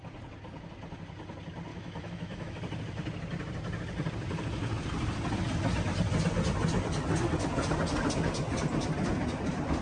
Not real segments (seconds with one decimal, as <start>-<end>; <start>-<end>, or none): 1.7-2.6